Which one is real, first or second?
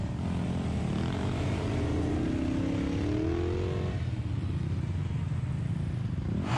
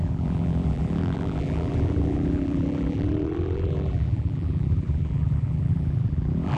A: first